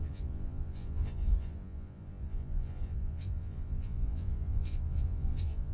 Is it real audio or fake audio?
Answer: fake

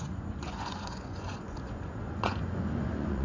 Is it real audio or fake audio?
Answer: fake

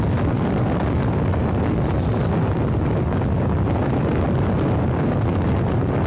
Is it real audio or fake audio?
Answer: real